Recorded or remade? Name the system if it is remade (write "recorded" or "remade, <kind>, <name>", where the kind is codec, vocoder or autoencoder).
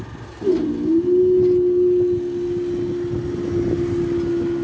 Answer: recorded